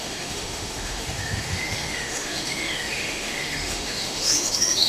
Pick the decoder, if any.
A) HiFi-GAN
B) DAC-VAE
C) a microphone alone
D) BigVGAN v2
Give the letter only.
B